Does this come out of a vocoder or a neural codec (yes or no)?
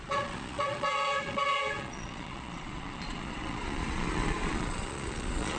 yes